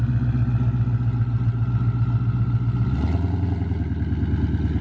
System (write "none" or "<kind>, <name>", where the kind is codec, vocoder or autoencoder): none